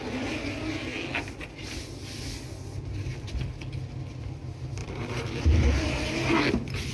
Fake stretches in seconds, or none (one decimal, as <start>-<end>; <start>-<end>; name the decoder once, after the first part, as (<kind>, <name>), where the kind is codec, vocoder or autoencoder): 4.8-6.0 (vocoder, BigVGAN v2)